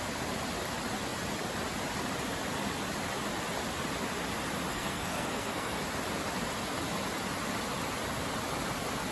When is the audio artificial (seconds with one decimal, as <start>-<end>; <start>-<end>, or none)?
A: 4.7-5.8